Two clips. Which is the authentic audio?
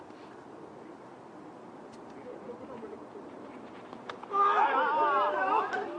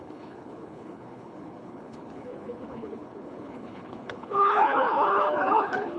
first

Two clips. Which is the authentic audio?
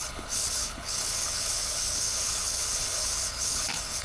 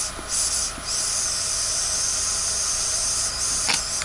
second